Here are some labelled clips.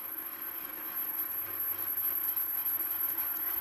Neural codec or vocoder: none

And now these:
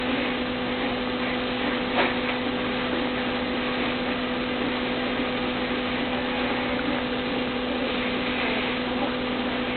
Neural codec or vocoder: none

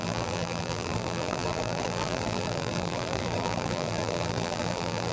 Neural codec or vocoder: vocoder, BigVGAN v2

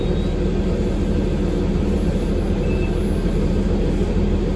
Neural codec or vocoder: none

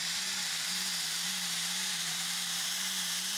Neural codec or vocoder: vocoder, BigVGAN v2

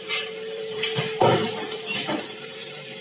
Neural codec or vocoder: vocoder, BigVGAN v2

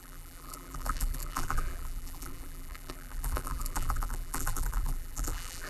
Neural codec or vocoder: vocoder, BigVGAN v2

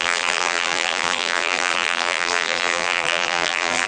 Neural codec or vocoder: vocoder, BigVGAN v2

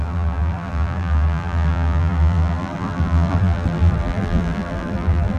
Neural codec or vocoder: vocoder, BigVGAN v2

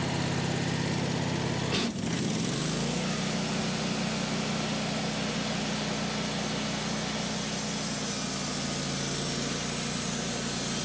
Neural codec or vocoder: none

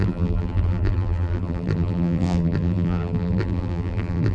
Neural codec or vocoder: vocoder, BigVGAN v2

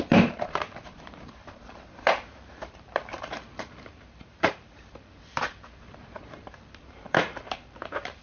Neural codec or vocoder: vocoder, BigVGAN v2